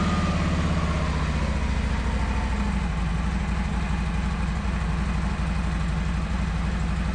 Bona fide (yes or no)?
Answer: yes